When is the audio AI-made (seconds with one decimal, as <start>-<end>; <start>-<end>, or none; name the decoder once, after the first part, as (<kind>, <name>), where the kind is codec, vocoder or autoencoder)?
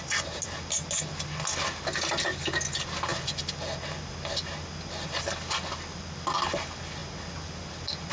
none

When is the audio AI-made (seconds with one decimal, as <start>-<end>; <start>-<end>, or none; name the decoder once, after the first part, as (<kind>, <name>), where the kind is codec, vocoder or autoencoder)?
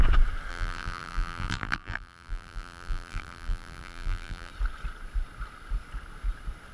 0.5-4.5 (vocoder, BigVGAN v2)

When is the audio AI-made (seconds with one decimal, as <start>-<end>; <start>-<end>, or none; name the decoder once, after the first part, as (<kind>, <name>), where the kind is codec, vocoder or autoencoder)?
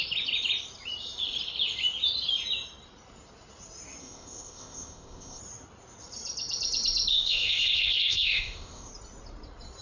4.0-5.4 (codec, ZipCodec); 7.1-8.9